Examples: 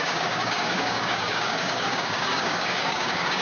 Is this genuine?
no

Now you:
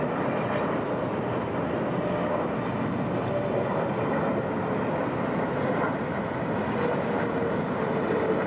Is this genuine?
yes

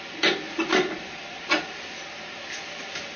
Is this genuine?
yes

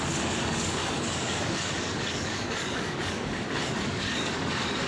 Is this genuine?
no